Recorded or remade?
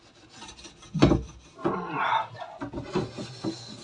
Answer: recorded